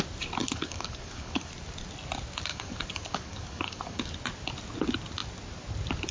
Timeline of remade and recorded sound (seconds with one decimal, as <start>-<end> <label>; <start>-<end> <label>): 0.0-0.4 recorded; 0.4-1.5 remade; 1.5-2.5 recorded; 2.5-4.1 remade; 4.1-6.1 recorded